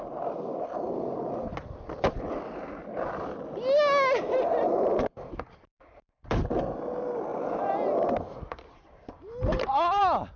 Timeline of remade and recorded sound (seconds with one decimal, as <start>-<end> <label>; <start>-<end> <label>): 0.0-4.9 recorded; 4.9-6.6 remade; 6.6-7.3 recorded; 7.3-10.0 remade; 10.0-10.4 recorded